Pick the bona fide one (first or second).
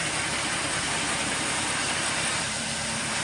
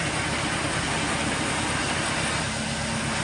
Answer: second